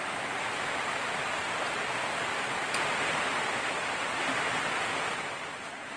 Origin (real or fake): real